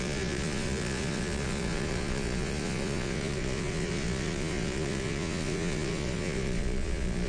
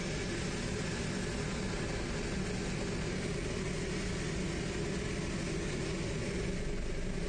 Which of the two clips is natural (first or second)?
second